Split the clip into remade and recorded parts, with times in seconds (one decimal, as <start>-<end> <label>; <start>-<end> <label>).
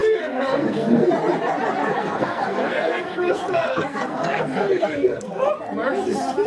0.0-1.1 remade; 1.1-1.8 recorded; 1.8-5.5 remade; 5.5-6.5 recorded